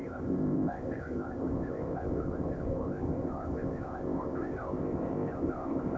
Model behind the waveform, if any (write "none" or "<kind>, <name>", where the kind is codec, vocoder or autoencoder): codec, ZipCodec